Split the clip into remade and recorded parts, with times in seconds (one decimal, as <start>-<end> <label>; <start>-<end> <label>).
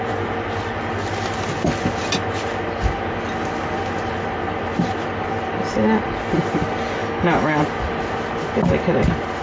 0.0-7.0 recorded; 7.0-7.6 remade; 7.6-9.4 recorded